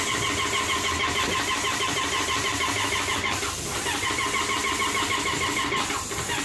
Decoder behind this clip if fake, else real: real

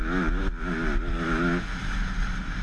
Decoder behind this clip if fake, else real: real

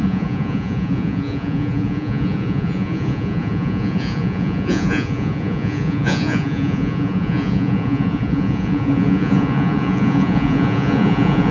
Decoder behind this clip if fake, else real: fake, vocoder, Vocos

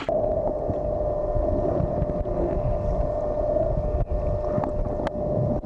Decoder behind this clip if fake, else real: real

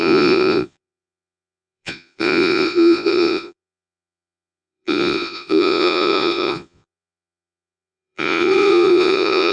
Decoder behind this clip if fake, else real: fake, vocoder, Vocos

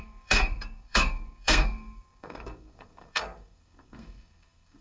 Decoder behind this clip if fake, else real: fake, codec, SNAC